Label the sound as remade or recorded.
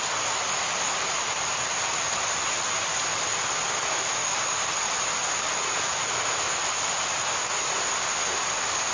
recorded